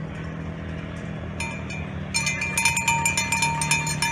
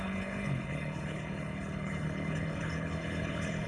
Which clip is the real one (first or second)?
first